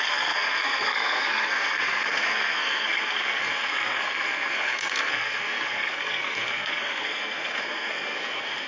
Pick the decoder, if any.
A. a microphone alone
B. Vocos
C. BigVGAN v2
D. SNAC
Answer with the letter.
D